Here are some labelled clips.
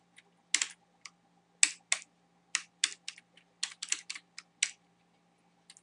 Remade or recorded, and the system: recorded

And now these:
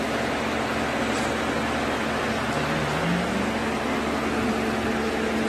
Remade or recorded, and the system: remade, vocoder, BigVGAN v2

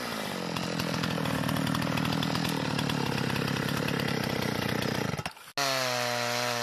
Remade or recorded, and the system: recorded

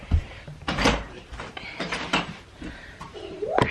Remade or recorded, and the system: remade, vocoder, BigVGAN v2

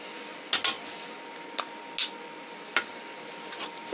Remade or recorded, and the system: recorded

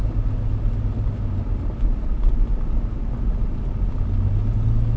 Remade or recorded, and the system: recorded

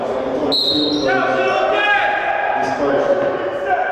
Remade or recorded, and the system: recorded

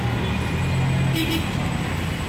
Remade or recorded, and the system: recorded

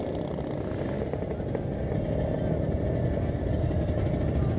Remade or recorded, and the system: recorded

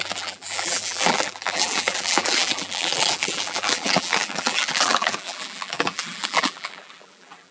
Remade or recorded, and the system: remade, vocoder, BigVGAN v2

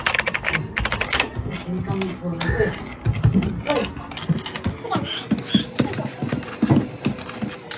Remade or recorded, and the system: recorded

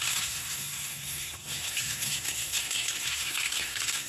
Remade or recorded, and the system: remade, codec, SNAC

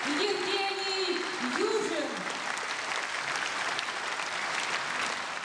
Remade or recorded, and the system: recorded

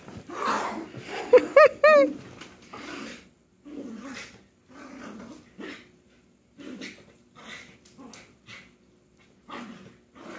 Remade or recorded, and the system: recorded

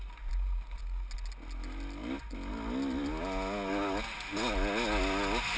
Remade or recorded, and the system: recorded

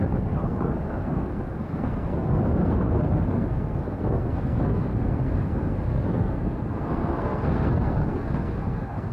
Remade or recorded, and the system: remade, codec, SNAC